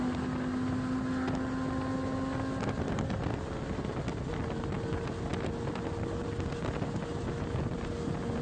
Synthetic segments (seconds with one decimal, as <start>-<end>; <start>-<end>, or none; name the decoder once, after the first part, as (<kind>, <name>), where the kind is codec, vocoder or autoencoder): none